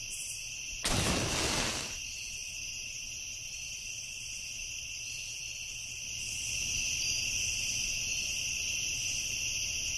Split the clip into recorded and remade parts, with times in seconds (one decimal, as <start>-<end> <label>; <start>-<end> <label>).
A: 0.0-10.0 recorded

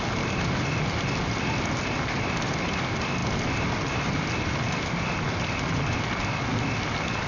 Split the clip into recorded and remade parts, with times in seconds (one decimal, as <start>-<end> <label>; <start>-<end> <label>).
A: 0.0-7.3 recorded

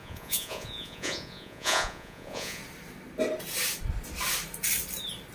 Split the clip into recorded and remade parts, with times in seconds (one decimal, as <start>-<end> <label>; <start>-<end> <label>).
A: 0.0-2.6 remade; 2.6-5.3 recorded

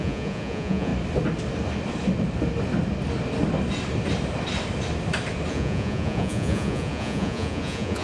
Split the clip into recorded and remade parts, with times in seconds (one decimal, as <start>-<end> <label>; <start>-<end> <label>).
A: 0.0-0.9 remade; 0.9-5.5 recorded; 5.5-8.0 remade

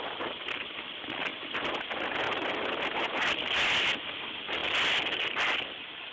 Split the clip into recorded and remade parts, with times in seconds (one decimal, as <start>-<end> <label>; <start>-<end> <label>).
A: 0.0-6.1 recorded

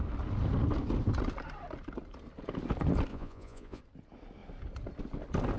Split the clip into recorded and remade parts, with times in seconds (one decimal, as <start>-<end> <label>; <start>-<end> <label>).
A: 0.0-3.1 recorded; 3.1-3.8 remade; 3.8-5.6 recorded